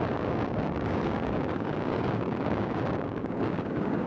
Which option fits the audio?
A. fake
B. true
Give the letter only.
A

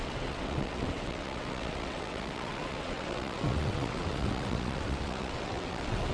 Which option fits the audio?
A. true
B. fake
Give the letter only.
B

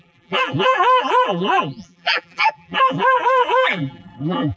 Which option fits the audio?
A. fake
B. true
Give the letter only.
A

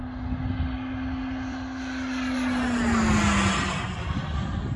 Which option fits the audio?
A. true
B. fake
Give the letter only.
A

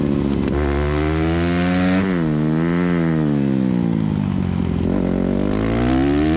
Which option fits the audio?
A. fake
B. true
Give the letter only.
B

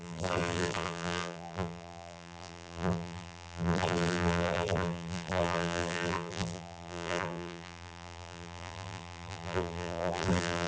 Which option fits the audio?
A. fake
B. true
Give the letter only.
A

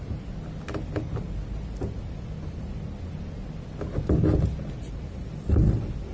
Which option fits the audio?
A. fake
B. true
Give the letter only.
B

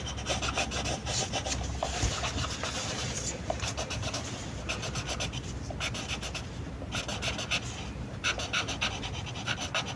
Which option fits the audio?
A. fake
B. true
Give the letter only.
B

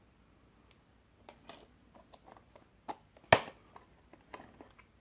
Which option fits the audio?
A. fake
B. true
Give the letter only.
B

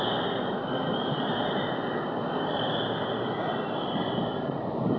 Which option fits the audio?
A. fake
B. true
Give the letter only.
B